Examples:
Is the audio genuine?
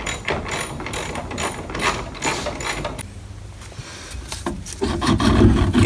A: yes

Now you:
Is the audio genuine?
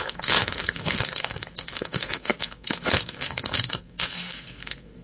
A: no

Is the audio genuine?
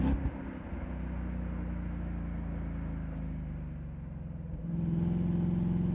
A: yes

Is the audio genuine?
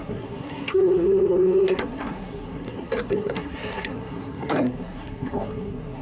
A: no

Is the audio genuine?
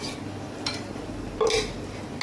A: yes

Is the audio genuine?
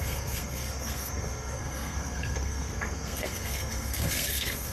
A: no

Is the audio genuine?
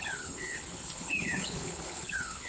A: no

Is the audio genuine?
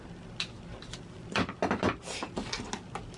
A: yes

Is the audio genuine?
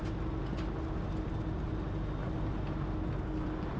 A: yes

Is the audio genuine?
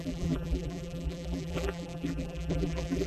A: no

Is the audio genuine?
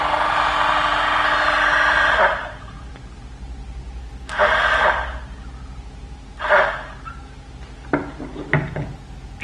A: yes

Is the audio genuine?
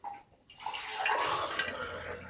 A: yes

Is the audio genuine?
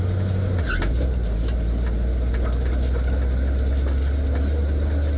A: yes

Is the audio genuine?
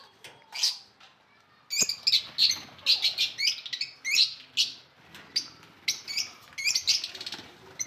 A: yes